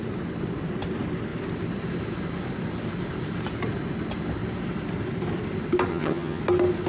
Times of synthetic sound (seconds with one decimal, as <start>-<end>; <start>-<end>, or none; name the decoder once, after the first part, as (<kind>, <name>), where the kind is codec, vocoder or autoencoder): 5.9-6.4 (vocoder, HiFi-GAN)